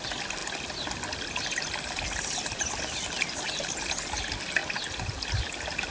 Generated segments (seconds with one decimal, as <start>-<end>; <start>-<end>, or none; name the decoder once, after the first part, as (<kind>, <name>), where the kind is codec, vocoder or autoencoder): none